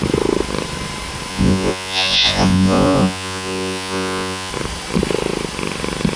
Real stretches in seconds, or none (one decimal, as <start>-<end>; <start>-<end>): 0.0-1.3; 4.5-6.2